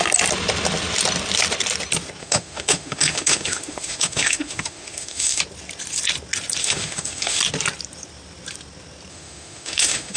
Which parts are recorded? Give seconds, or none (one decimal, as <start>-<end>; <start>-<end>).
0.0-2.2; 5.4-6.6; 7.4-9.1